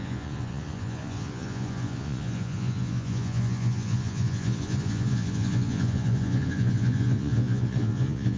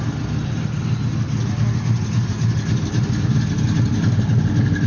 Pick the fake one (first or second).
first